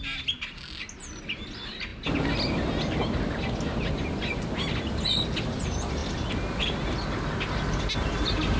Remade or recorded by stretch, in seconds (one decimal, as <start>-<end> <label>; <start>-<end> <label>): 0.0-8.6 recorded